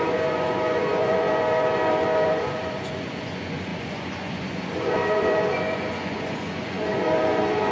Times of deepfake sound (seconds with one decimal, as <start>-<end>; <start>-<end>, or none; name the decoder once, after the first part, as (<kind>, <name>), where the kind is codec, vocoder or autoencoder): 0.0-7.7 (vocoder, Vocos)